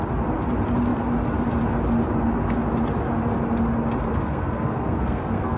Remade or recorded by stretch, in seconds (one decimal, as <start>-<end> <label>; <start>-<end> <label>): 0.0-4.1 recorded; 4.1-5.6 remade